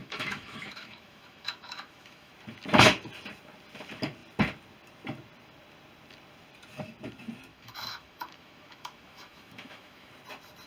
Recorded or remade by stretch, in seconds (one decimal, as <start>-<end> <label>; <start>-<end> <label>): 0.0-2.3 remade; 2.3-7.5 recorded; 7.5-10.1 remade; 10.1-10.7 recorded